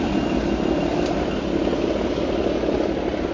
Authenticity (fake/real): real